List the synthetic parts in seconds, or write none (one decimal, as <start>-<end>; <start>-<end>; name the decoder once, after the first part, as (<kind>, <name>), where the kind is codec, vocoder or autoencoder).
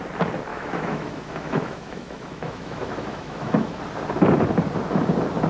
0.5-3.8 (autoencoder, DAC-VAE)